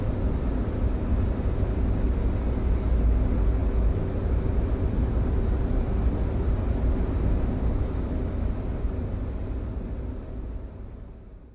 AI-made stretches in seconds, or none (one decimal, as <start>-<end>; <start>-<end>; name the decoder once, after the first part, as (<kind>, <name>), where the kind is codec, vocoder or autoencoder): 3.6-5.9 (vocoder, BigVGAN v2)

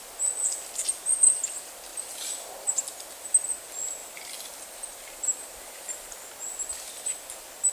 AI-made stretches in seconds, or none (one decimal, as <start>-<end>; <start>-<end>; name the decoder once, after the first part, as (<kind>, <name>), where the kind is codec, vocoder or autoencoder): 4.0-6.3 (vocoder, BigVGAN v2)

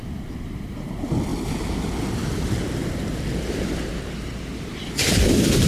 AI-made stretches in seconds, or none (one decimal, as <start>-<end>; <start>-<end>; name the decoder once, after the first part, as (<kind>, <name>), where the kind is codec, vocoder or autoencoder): 1.3-3.9 (vocoder, BigVGAN v2)

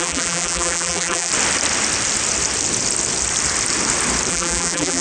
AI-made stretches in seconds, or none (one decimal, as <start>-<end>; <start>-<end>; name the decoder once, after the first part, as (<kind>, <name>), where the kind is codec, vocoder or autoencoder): 0.0-1.3 (vocoder, BigVGAN v2); 4.3-5.0

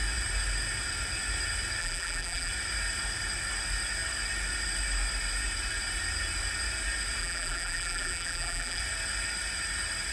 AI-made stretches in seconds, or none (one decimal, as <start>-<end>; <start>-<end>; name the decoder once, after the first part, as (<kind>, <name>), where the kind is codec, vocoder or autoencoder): 1.8-2.5 (vocoder, BigVGAN v2); 7.2-8.8

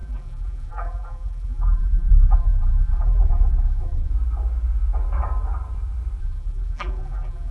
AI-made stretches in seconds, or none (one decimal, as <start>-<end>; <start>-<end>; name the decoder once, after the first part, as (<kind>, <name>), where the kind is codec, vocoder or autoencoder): 0.0-4.1 (vocoder, BigVGAN v2); 6.2-7.5

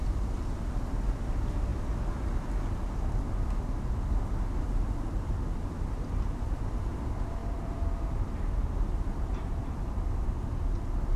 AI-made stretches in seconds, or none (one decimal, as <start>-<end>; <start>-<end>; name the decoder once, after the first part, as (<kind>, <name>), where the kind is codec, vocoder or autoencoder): 7.4-9.8 (vocoder, BigVGAN v2)